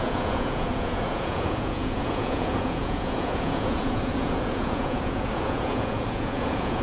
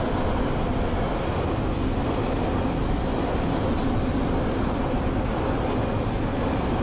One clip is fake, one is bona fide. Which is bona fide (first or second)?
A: second